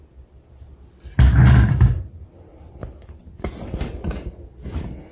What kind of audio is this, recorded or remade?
recorded